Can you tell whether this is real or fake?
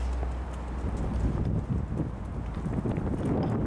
real